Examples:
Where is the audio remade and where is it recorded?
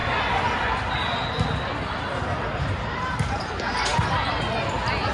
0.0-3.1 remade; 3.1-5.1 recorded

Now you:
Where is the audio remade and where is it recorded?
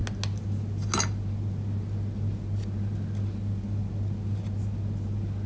0.0-5.5 recorded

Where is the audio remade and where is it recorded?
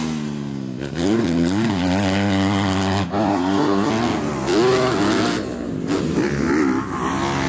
0.0-3.3 recorded; 3.3-3.9 remade; 3.9-7.5 recorded